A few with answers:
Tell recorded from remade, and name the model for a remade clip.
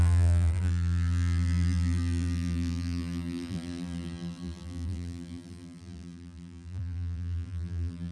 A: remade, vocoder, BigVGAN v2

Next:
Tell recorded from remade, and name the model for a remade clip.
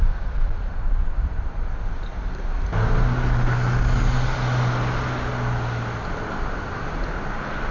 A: recorded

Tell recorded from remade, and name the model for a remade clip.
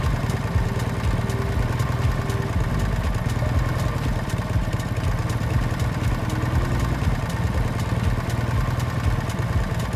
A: recorded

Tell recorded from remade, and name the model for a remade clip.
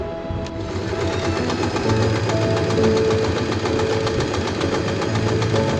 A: recorded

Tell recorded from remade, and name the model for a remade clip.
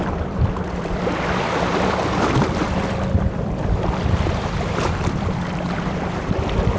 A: remade, vocoder, BigVGAN v2